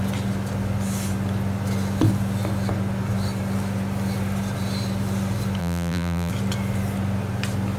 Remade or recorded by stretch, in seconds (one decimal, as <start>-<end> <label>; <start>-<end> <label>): 0.0-5.6 recorded; 5.6-6.3 remade; 6.3-7.8 recorded